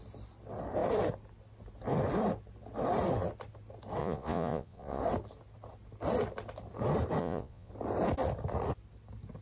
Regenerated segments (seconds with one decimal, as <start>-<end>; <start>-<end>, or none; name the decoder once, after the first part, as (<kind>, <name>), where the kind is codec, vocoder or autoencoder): 4.0-5.0 (vocoder, Vocos); 7.2-7.7